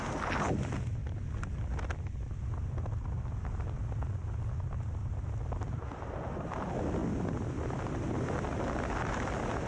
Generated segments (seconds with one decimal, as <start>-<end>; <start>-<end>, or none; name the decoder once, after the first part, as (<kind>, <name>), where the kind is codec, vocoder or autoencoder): none